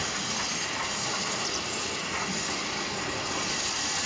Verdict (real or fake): real